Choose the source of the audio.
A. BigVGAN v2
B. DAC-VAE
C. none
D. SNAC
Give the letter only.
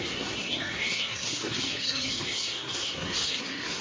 D